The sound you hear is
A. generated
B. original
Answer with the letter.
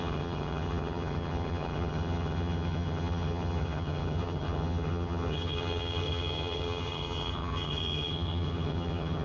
A